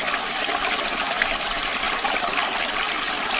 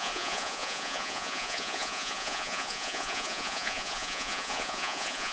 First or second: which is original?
first